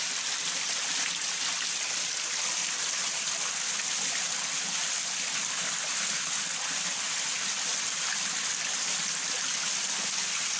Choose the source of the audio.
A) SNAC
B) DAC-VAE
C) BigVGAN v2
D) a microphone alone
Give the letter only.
D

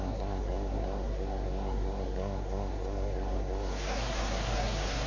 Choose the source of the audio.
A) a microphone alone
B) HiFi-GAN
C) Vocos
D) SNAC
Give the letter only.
D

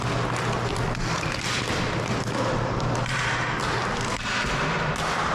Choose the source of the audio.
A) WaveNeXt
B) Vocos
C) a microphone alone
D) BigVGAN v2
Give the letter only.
C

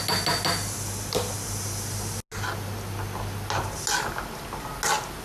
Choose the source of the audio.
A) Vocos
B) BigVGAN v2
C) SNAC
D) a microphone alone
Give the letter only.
D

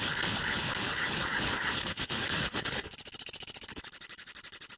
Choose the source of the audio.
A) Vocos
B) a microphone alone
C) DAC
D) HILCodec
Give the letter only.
D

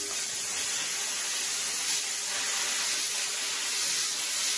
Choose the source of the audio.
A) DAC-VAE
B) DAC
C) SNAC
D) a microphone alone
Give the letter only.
D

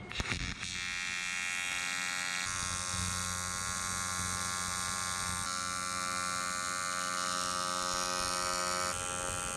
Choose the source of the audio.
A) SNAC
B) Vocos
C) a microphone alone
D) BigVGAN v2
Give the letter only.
C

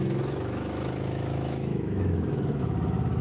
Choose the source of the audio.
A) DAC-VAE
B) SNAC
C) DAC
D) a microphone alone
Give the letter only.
A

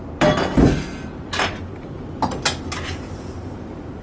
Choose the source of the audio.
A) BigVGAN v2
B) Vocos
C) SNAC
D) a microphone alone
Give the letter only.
D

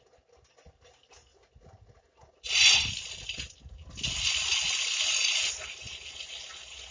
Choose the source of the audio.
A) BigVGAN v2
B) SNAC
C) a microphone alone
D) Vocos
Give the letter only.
C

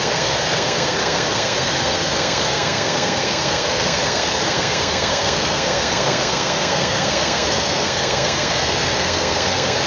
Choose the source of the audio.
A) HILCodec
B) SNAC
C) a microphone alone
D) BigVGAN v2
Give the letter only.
B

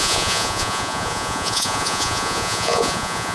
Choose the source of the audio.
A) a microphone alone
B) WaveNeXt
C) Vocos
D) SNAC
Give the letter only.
C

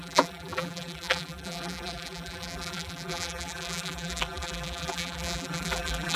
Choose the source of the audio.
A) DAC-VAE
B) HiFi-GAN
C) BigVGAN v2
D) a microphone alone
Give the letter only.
C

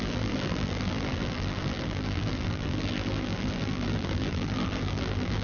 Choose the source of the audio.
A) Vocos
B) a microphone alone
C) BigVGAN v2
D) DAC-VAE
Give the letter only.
C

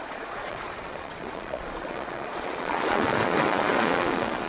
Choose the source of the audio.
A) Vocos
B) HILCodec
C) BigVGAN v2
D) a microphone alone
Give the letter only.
A